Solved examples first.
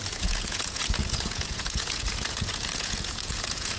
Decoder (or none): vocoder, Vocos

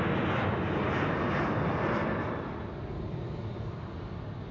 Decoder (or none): none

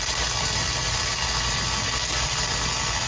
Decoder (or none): none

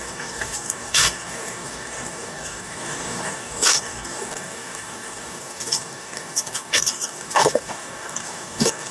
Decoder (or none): codec, DAC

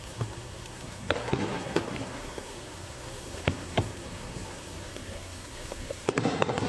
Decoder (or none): codec, SNAC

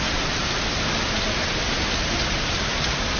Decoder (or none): none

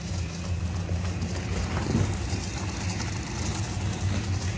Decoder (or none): none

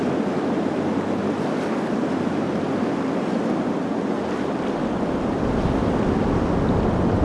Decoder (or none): none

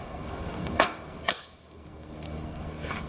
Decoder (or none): codec, SNAC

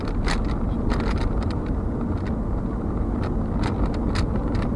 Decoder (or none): none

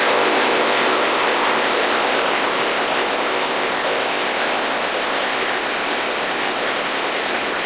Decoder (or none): codec, ZipCodec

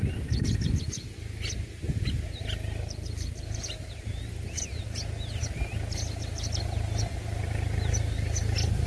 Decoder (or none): none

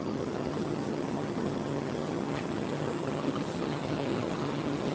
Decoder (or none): vocoder, HiFi-GAN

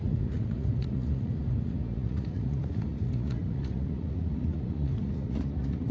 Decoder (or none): vocoder, Vocos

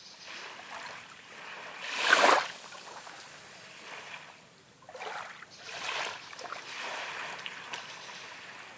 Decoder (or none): none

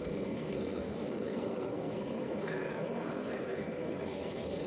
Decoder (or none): codec, SNAC